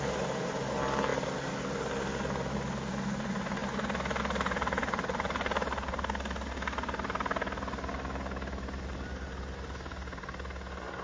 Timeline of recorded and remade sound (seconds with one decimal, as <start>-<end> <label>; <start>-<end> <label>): 0.0-11.0 recorded